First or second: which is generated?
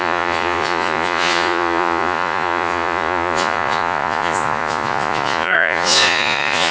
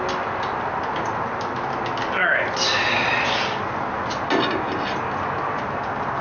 first